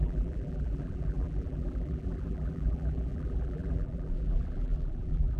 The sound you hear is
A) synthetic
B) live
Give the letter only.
A